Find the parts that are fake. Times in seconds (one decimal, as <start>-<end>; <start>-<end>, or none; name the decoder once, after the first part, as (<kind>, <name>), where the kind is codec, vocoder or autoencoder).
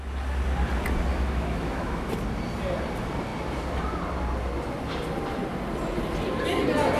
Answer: 1.1-2.1 (autoencoder, DAC-VAE)